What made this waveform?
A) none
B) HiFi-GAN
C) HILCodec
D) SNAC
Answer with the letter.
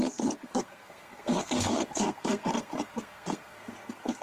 D